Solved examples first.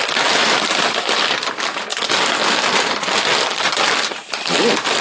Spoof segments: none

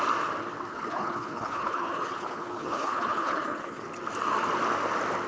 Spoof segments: 0.7-3.8 (codec, HILCodec)

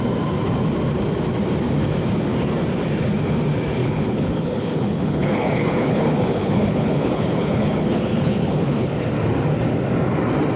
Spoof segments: 3.8-8.9 (codec, HILCodec)

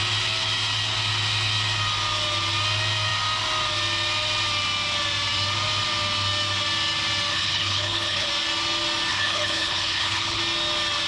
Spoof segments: 7.3-8.3 (codec, HILCodec); 9.1-10.4

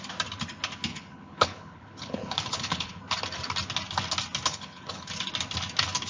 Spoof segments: 0.9-3.0 (codec, HILCodec); 4.5-5.1

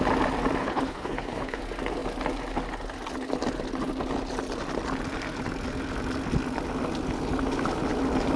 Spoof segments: 0.6-1.6 (codec, HILCodec)